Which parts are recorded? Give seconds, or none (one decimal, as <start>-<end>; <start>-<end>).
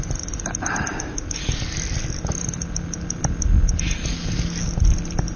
0.0-5.4